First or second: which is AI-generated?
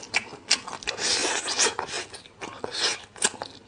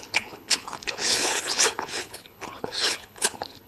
second